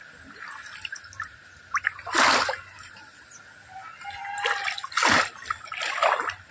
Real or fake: real